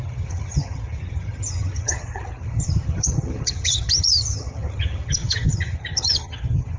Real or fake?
fake